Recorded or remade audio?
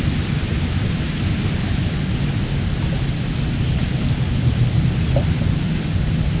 recorded